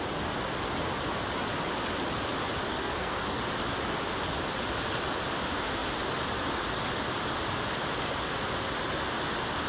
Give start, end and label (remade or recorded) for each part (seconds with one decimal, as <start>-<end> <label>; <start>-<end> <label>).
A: 0.0-2.7 recorded; 2.7-3.4 remade; 3.4-9.7 recorded